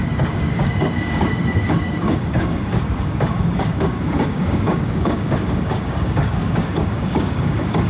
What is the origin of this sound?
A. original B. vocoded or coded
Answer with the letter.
B